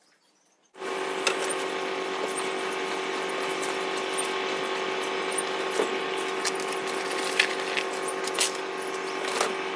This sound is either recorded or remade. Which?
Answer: recorded